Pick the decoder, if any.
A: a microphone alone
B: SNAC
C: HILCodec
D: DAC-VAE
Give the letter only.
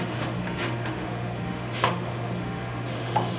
D